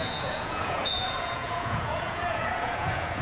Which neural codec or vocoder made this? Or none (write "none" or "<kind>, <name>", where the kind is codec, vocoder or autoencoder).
vocoder, Vocos